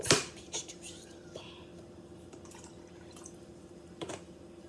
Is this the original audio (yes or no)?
no